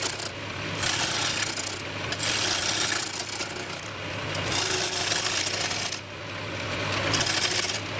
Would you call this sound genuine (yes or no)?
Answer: yes